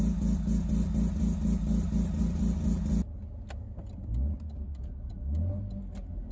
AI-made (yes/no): no